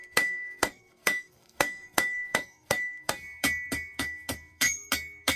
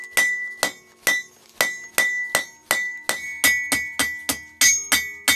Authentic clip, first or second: second